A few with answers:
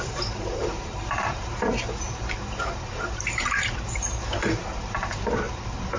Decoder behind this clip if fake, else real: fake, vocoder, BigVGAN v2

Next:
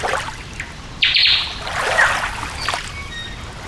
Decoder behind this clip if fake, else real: real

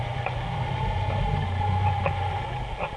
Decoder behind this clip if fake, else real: real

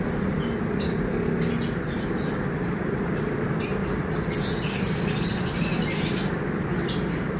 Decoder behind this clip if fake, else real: real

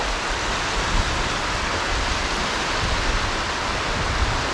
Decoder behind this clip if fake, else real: real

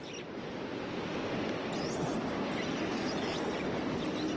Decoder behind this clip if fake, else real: real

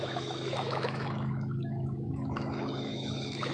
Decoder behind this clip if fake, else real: fake, autoencoder, DAC-VAE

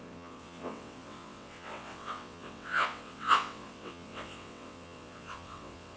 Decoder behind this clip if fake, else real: fake, vocoder, WaveNeXt